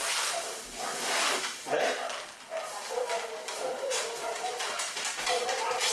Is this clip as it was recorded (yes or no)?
yes